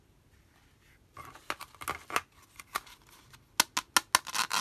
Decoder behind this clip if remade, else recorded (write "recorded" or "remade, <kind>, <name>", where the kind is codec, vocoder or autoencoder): recorded